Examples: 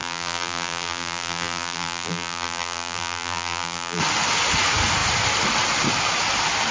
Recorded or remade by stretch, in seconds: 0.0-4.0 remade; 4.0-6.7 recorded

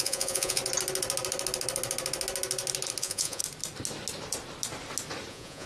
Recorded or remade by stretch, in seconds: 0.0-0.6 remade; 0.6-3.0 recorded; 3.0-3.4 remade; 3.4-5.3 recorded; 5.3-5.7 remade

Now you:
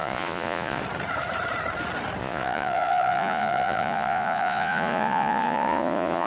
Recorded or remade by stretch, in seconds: 0.0-0.8 remade; 0.8-2.2 recorded; 2.2-6.3 remade

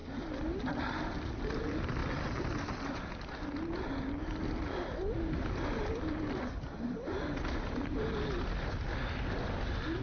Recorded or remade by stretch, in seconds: 0.0-10.0 recorded

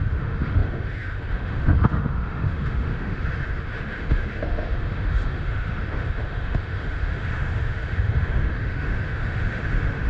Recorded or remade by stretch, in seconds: 0.0-10.1 remade

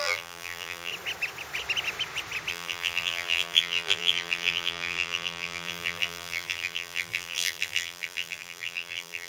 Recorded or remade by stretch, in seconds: 0.0-0.9 remade; 0.9-2.5 recorded; 2.5-9.3 remade

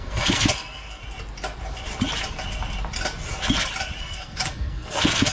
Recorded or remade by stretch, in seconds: 0.0-1.0 remade; 1.0-4.0 recorded; 4.0-5.3 remade